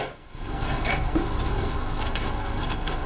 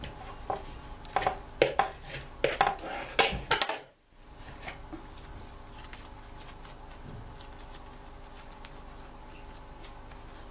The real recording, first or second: second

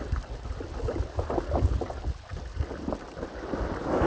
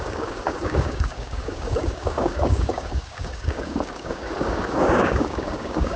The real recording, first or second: first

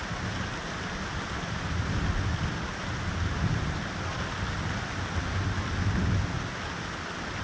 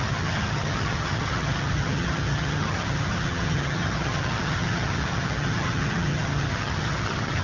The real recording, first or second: first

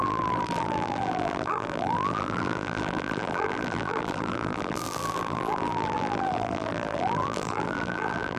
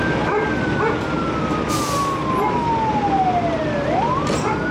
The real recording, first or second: second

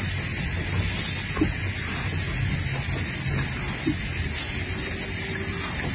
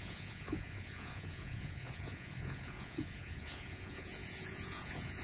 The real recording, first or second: first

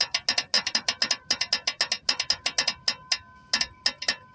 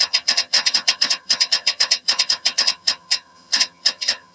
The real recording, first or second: first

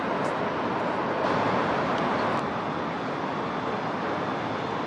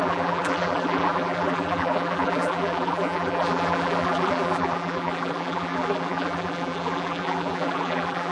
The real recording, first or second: first